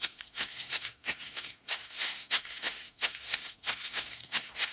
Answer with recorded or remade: remade